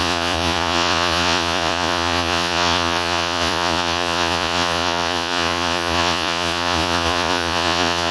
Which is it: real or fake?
fake